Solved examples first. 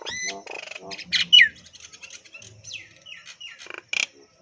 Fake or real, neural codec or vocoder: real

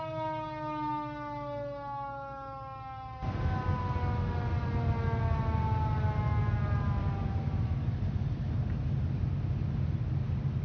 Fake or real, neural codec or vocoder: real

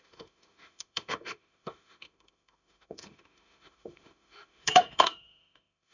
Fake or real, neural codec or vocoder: fake, autoencoder, DAC-VAE